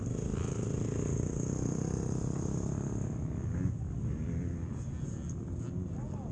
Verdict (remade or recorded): recorded